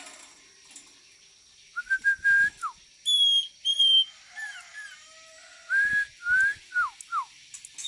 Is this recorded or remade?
recorded